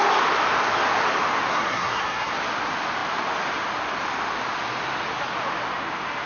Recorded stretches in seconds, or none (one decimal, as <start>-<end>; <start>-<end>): 0.0-1.5; 2.3-6.3